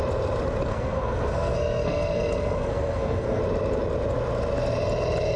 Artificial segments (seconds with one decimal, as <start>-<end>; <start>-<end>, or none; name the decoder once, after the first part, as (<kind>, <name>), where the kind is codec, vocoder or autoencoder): 0.7-3.4 (codec, SNAC)